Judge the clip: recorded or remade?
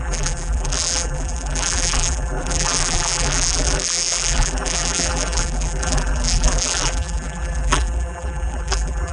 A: remade